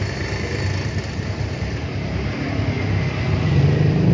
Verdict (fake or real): real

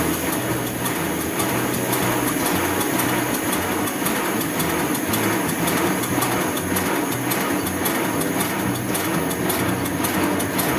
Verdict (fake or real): real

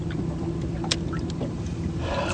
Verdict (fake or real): real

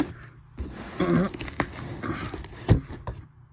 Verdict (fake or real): real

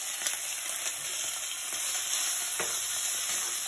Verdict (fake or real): real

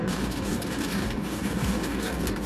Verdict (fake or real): fake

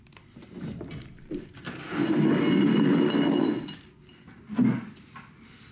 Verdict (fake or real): real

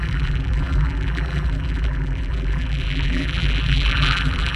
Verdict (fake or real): fake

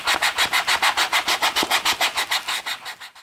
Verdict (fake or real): real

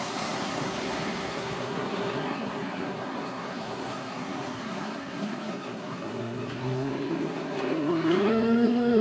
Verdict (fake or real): fake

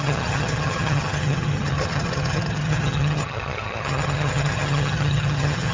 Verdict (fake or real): fake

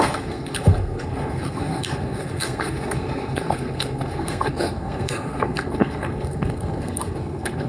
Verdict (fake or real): fake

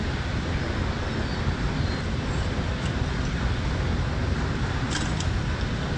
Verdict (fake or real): real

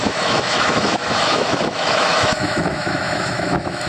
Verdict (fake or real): fake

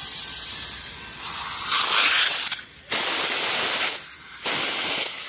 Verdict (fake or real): real